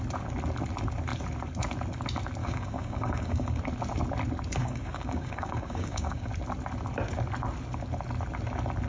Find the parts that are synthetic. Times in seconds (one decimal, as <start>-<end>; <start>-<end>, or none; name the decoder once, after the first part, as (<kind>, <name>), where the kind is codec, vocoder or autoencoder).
2.4-3.6 (codec, DAC); 4.6-6.3